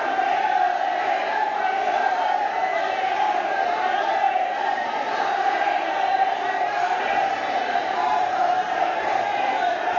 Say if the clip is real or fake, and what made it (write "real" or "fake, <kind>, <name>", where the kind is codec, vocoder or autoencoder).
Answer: fake, vocoder, BigVGAN v2